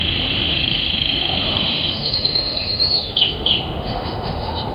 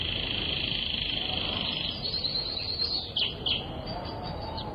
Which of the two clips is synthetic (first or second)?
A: first